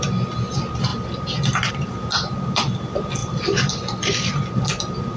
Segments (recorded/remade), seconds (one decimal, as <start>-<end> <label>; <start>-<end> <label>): 0.0-3.2 recorded; 3.2-4.6 remade; 4.6-5.2 recorded